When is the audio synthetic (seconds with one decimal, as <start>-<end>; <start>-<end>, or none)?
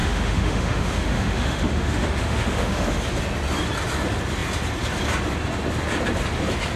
0.0-3.0